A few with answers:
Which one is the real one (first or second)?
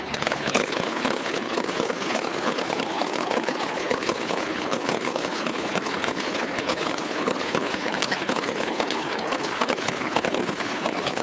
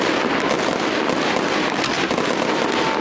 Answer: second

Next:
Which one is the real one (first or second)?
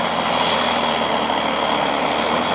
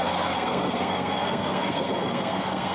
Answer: first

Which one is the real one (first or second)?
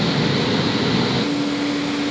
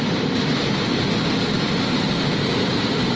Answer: first